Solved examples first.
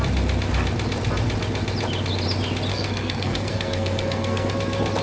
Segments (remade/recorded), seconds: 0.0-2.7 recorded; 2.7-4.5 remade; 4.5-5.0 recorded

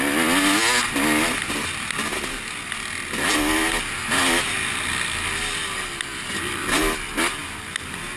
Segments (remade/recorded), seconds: 0.0-8.2 recorded